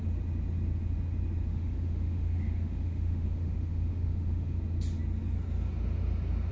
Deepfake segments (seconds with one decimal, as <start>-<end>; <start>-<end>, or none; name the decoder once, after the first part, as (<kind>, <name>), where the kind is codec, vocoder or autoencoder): 1.5-4.6 (autoencoder, DAC-VAE)